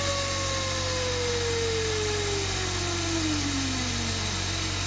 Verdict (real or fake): real